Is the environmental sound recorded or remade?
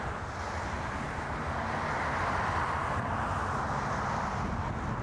recorded